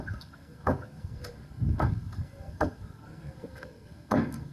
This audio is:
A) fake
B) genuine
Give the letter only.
A